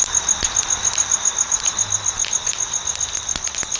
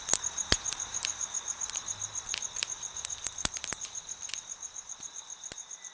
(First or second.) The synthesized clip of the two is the second